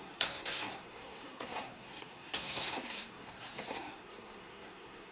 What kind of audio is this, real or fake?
fake